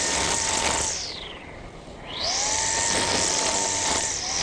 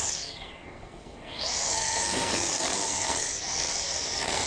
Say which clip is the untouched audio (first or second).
first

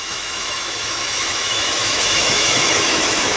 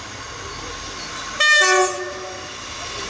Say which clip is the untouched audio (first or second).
second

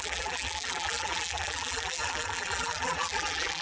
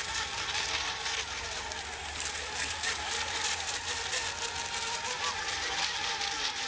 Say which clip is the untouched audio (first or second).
second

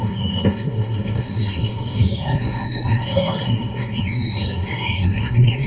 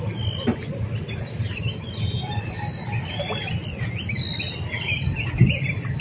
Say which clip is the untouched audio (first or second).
second